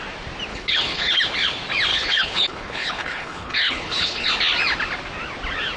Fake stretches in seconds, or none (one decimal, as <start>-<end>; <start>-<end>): 0.5-1.2; 1.9-4.3